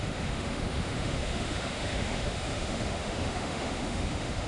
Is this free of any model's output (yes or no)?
no